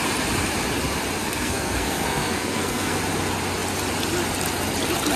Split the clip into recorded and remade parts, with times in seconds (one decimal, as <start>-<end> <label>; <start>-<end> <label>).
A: 0.0-1.2 recorded; 1.2-3.0 remade; 3.0-5.2 recorded

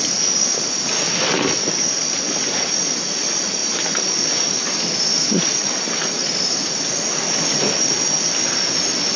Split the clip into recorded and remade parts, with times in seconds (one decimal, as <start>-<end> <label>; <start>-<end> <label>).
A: 0.0-9.2 recorded

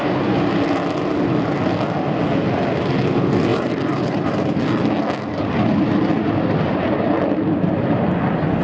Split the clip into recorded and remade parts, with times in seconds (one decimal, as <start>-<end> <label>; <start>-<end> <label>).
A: 0.0-3.5 recorded; 3.5-4.6 remade; 4.6-8.6 recorded

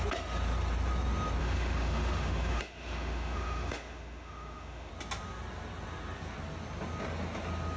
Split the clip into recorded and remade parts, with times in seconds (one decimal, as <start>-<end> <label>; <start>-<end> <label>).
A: 0.0-1.4 recorded; 1.4-4.9 remade; 4.9-7.8 recorded

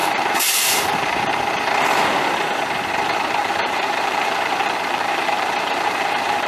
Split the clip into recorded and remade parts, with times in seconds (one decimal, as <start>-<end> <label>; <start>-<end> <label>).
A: 0.0-1.3 remade; 1.3-3.4 recorded; 3.4-6.5 remade